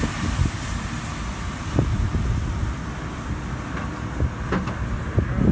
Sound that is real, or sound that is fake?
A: real